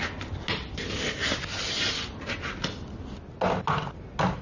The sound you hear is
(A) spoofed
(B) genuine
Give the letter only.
B